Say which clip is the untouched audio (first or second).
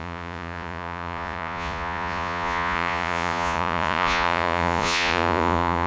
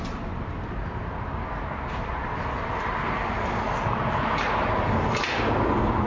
second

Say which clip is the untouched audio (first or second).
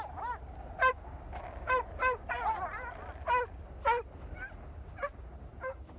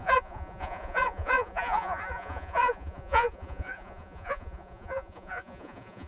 first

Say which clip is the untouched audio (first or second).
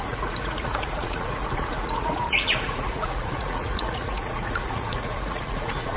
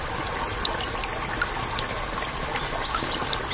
second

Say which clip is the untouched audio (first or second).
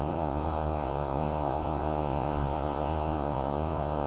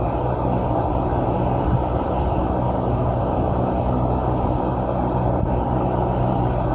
second